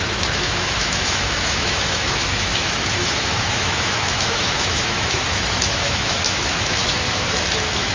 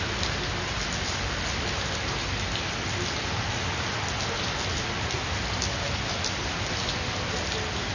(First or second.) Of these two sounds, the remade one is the first